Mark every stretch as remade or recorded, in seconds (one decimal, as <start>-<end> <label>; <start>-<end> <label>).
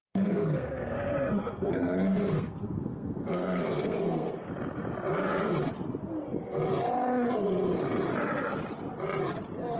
0.0-4.5 remade; 4.5-9.8 recorded